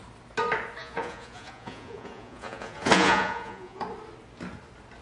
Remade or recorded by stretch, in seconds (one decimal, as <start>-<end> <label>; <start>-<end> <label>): 0.0-0.8 recorded; 0.8-3.8 remade; 3.8-5.0 recorded